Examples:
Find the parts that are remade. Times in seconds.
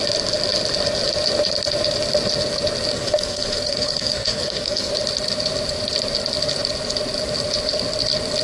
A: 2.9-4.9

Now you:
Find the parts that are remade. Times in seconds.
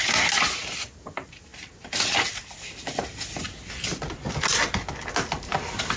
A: none